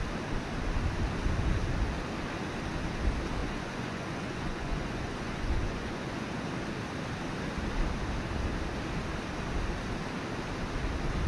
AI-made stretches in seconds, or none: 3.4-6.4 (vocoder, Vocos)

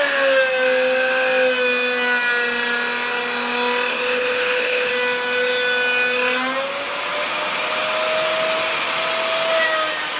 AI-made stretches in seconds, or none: 3.9-4.9 (codec, HILCodec)

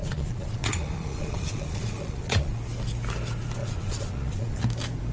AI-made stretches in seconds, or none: 0.0-2.6 (vocoder, Vocos); 3.6-4.6

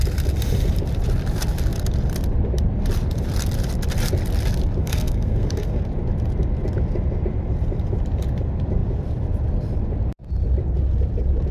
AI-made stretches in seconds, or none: 4.8-5.8 (codec, SNAC)

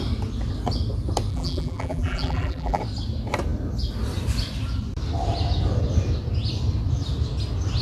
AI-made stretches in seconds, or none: 1.3-2.8 (vocoder, BigVGAN v2)

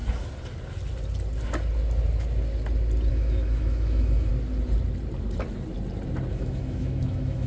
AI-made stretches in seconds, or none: 3.1-4.3 (autoencoder, DAC-VAE); 6.3-7.5